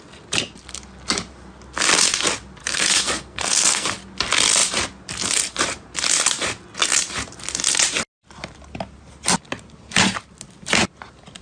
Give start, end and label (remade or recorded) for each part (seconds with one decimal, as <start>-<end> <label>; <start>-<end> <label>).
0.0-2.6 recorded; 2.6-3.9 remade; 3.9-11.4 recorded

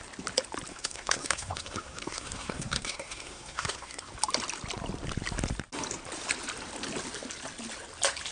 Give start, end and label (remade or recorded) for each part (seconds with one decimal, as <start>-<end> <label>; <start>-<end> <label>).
0.0-0.7 recorded; 0.7-4.1 remade; 4.1-8.3 recorded

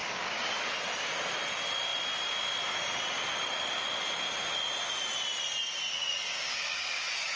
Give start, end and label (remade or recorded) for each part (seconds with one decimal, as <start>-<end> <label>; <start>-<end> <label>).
0.0-0.6 remade; 0.6-5.9 recorded; 5.9-7.4 remade